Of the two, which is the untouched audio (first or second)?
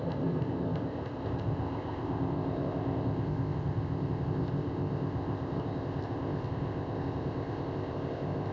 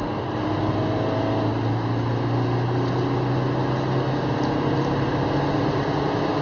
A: second